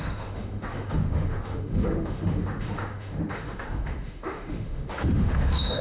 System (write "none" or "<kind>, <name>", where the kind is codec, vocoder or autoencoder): autoencoder, DAC-VAE